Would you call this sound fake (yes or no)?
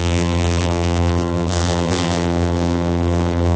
yes